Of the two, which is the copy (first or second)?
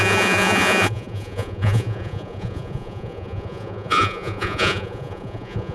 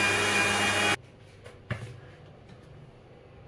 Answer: first